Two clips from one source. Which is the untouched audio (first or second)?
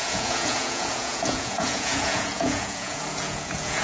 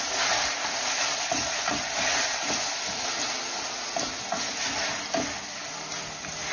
second